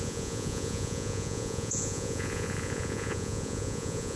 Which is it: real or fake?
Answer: fake